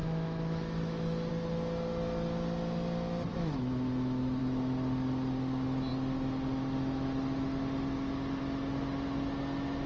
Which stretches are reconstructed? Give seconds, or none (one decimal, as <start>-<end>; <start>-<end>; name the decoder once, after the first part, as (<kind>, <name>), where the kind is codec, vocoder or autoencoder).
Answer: 0.0-1.3 (autoencoder, DAC-VAE); 3.3-4.4